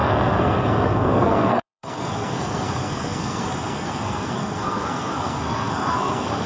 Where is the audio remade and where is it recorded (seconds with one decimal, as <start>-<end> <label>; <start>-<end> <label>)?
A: 0.0-6.5 remade